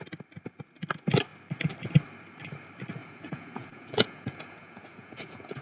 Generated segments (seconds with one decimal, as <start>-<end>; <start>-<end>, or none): 3.0-5.6